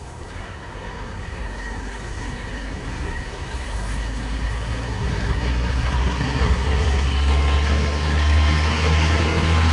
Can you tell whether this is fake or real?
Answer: fake